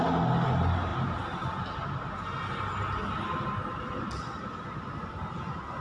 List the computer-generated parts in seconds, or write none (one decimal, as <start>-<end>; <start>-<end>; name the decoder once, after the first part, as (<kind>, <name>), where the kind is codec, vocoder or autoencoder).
none